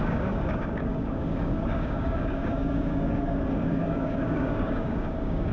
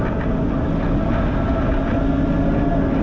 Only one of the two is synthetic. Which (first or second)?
first